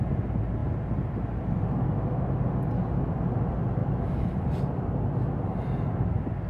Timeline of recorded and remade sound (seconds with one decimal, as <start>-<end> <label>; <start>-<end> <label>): 0.0-3.8 recorded; 3.8-4.9 remade; 4.9-6.5 recorded